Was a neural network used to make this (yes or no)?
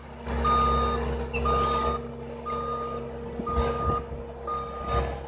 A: no